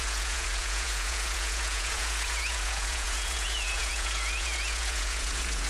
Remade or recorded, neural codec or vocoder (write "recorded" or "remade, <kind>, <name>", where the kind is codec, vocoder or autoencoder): remade, vocoder, Vocos